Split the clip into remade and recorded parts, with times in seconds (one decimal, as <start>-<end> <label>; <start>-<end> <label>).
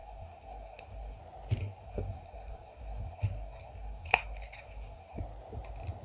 0.0-1.2 remade; 1.2-1.6 recorded; 1.6-5.2 remade; 5.2-6.0 recorded